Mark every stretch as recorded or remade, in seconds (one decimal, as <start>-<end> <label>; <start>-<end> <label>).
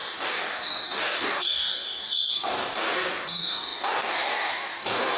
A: 0.0-5.2 remade